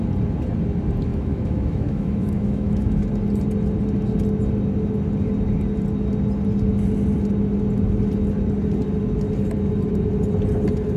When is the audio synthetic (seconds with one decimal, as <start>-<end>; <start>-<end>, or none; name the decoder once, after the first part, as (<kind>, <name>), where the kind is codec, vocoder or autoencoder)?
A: 1.1-3.0 (autoencoder, DAC-VAE)